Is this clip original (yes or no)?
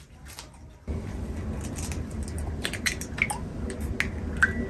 yes